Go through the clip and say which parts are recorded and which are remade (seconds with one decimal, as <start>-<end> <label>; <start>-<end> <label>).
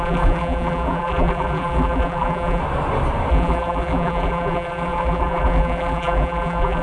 0.0-2.6 remade; 2.6-3.3 recorded; 3.3-6.8 remade